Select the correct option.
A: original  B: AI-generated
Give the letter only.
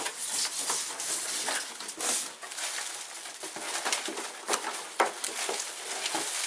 A